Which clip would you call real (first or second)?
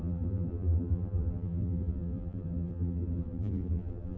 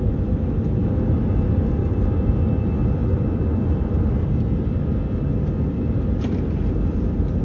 second